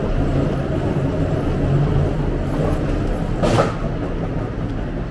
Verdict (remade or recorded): recorded